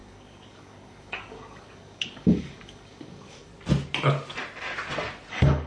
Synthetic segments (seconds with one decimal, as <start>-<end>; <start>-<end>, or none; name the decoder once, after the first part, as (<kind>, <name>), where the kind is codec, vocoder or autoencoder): 0.0-3.5 (codec, DAC); 5.3-5.7